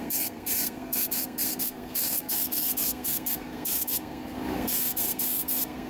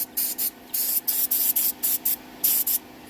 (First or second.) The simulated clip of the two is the first